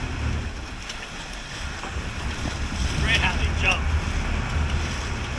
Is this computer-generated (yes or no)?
no